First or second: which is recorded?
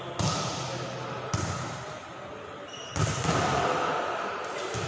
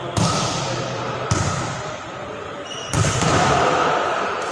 first